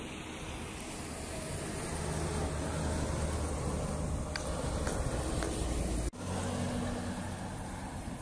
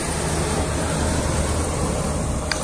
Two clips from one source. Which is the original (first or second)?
first